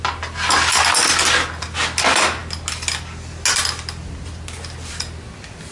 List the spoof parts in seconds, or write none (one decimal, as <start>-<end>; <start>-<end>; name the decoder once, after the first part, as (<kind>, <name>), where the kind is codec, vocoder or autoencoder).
none

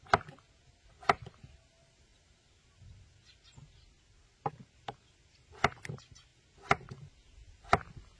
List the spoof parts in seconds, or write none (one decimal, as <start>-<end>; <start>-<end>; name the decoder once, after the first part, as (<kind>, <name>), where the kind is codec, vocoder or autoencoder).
none

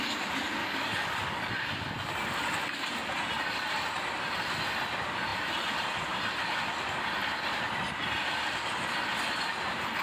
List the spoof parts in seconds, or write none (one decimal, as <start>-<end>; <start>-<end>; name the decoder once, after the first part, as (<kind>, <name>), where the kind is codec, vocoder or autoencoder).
0.6-1.5 (codec, DAC)

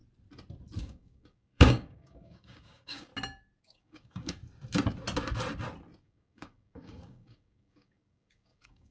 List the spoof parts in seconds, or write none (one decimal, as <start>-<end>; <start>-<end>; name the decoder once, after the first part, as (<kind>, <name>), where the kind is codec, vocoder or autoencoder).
0.8-3.1 (codec, DAC); 3.6-4.4; 6.0-8.9

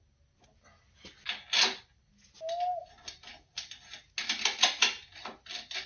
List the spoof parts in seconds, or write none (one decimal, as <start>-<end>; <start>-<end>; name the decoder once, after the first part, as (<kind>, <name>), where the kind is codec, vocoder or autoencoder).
none

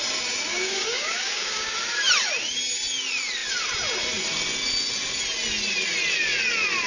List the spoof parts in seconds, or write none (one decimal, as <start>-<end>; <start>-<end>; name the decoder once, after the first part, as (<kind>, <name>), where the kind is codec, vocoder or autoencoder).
0.5-1.7 (codec, DAC)

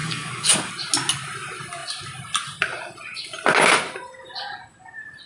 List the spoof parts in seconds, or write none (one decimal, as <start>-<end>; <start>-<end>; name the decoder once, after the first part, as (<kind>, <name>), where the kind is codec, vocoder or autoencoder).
0.0-0.7 (codec, DAC)

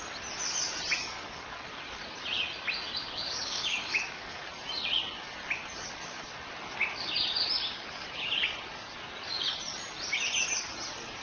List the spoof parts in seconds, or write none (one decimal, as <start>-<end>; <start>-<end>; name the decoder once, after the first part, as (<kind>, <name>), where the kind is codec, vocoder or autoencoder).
1.0-1.7 (codec, DAC); 3.0-4.4